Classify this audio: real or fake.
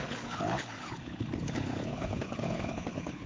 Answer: fake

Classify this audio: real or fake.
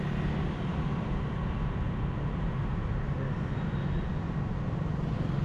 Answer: real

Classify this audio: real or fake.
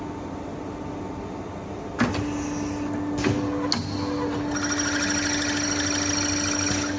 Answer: real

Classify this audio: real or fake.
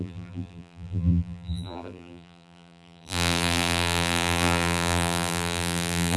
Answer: fake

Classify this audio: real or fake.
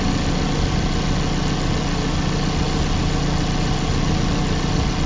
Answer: real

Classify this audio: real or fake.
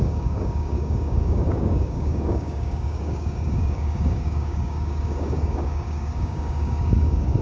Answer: fake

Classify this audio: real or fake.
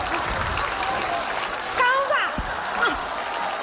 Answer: real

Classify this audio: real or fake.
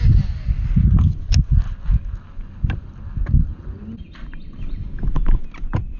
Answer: real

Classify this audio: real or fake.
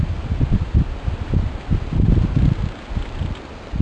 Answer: real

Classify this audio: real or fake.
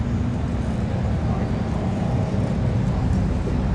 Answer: real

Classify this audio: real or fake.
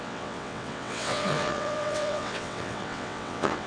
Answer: fake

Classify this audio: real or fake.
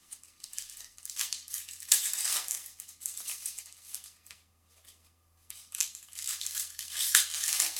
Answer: fake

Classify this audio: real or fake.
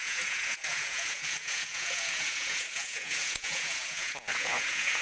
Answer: fake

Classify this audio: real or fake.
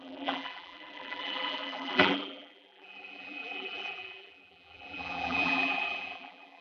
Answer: fake